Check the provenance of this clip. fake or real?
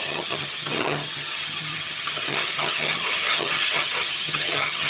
fake